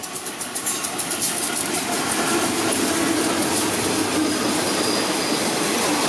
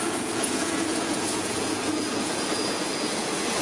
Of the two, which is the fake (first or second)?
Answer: second